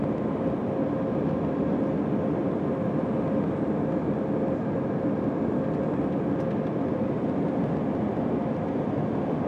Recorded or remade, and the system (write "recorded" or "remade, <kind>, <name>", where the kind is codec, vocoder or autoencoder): recorded